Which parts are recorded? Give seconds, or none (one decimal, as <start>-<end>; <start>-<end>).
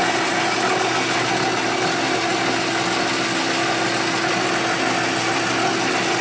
0.0-6.2